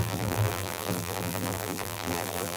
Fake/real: fake